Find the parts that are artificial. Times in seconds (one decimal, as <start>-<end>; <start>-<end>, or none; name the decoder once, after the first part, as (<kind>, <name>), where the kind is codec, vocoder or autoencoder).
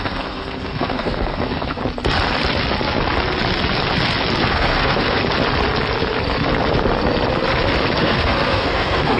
0.0-1.8 (codec, SNAC); 4.5-5.2; 8.0-9.2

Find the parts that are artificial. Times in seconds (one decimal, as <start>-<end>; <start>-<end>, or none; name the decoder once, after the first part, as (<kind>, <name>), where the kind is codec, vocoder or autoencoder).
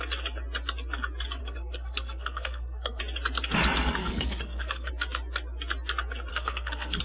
1.4-3.0 (codec, SNAC); 4.0-4.9; 6.3-7.0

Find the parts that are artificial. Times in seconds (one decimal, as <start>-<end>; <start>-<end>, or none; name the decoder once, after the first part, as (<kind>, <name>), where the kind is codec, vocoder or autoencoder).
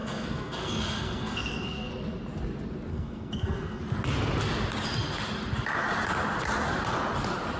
0.0-1.9 (codec, SNAC); 2.9-3.8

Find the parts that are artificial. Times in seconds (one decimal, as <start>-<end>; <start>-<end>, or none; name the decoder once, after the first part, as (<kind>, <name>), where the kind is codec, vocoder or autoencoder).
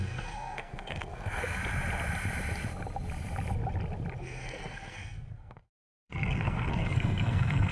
0.0-1.6 (codec, SNAC); 4.2-7.7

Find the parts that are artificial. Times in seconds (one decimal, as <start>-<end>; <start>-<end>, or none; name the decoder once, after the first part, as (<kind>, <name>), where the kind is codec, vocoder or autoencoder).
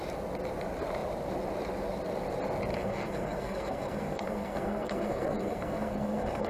2.7-6.5 (codec, SNAC)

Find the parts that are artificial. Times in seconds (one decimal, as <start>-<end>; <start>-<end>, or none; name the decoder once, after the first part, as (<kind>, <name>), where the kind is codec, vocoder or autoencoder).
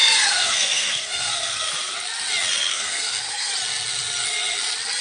0.0-1.7 (codec, SNAC); 2.7-3.5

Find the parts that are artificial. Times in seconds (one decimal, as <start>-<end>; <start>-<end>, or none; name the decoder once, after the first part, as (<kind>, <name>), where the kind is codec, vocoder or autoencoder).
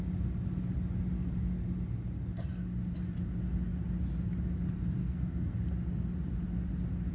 5.0-5.6 (codec, SNAC)